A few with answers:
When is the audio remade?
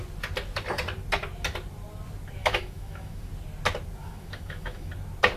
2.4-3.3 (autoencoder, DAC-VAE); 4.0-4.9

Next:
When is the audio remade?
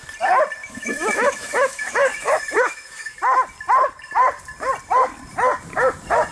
0.6-3.2 (autoencoder, DAC-VAE)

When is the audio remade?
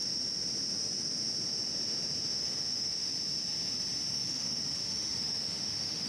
2.4-3.1 (autoencoder, DAC-VAE); 4.1-6.1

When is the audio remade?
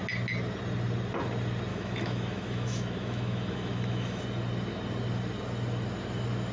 1.7-4.2 (autoencoder, DAC-VAE)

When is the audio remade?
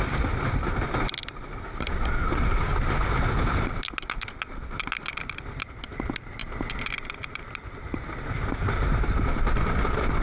none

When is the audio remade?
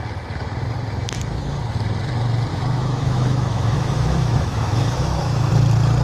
2.5-5.5 (autoencoder, DAC-VAE)